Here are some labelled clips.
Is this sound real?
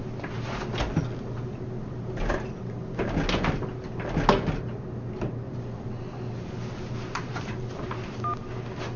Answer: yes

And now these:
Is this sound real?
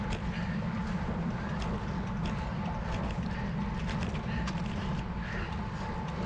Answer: yes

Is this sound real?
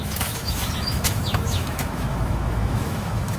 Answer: no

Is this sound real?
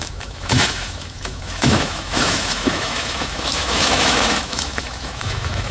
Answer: no